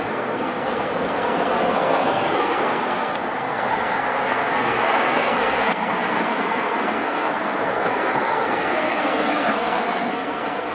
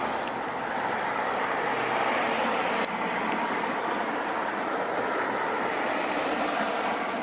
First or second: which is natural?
second